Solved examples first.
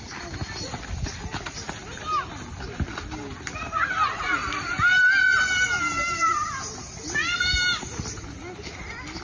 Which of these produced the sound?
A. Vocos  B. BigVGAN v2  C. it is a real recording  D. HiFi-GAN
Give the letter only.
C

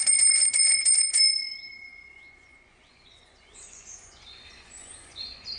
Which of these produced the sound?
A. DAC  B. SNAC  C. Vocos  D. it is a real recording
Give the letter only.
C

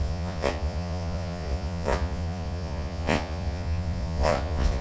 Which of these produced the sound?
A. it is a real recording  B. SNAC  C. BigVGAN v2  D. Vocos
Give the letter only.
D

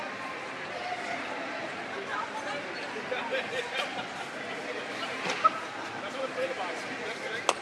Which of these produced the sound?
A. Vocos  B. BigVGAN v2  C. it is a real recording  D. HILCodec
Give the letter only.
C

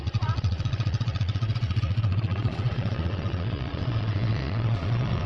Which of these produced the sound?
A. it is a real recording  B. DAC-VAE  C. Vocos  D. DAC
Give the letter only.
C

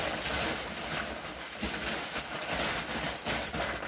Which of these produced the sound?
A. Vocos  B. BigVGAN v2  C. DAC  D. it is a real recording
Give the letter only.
D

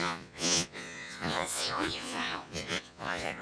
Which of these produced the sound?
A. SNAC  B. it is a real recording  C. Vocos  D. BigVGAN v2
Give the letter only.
C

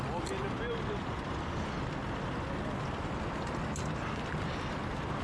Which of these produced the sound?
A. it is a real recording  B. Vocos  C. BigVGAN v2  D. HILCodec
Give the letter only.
A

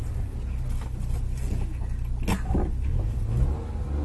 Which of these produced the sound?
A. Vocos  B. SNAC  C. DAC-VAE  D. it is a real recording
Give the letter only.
D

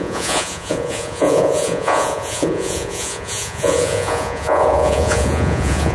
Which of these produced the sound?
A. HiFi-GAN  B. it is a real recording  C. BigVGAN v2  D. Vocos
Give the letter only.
D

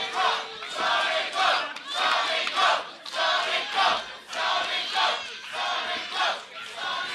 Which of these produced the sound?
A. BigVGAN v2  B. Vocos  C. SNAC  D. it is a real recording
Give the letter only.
D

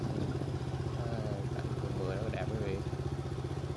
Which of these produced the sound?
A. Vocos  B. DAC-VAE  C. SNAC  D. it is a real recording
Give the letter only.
D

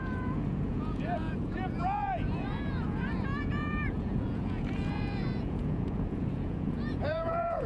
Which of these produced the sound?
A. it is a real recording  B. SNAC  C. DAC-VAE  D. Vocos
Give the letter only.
D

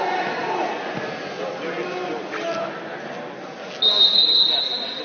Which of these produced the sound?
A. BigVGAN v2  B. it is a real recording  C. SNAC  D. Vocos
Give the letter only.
B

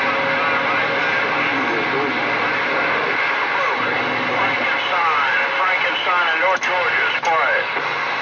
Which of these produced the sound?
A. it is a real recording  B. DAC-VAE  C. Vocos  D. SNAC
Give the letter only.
A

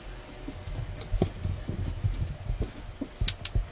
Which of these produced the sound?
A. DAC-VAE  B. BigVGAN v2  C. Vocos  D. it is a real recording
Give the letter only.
D